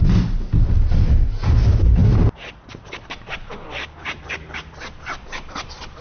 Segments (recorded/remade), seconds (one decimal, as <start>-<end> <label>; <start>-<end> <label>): 0.0-6.0 recorded